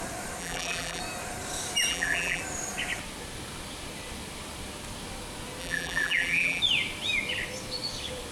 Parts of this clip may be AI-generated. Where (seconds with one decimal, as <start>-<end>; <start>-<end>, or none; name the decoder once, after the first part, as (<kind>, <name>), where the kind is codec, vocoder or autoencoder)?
0.4-1.0 (vocoder, BigVGAN v2); 1.9-2.4; 5.6-6.6